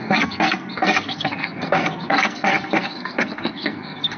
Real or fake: fake